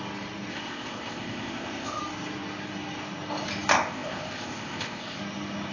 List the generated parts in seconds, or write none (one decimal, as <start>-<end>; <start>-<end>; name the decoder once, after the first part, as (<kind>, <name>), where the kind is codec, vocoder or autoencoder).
0.5-2.0 (codec, ZipCodec); 3.7-5.2

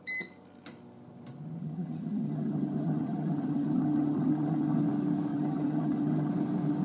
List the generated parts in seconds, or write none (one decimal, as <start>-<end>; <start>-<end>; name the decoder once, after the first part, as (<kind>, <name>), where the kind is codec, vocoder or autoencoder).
1.6-4.8 (vocoder, HiFi-GAN); 5.3-6.3

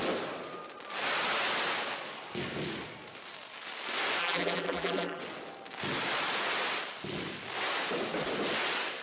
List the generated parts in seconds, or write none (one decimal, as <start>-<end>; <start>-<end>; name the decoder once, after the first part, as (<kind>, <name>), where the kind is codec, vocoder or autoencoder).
4.2-5.2 (vocoder, BigVGAN v2)

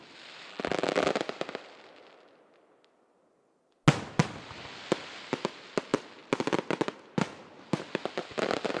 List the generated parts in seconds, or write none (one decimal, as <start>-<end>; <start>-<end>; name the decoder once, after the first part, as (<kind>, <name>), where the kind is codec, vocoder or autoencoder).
0.5-1.1 (vocoder, BigVGAN v2)